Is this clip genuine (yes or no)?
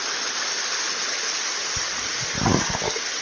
yes